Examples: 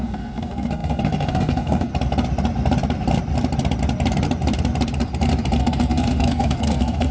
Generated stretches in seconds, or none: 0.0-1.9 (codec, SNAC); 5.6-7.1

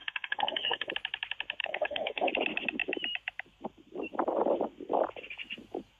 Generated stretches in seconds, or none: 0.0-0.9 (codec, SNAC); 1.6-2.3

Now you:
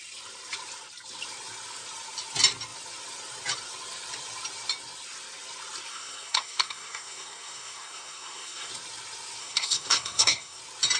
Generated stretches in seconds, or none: 5.9-8.7 (codec, SNAC); 9.4-10.6

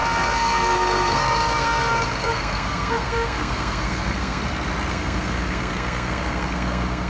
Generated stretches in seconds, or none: 0.0-4.4 (codec, SNAC); 4.9-7.1

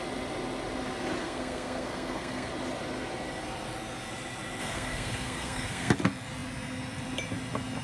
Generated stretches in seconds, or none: 1.2-2.5 (codec, SNAC); 4.6-5.9

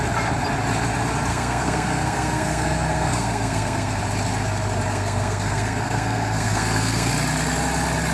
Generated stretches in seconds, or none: 1.3-4.0 (codec, SNAC); 4.9-7.1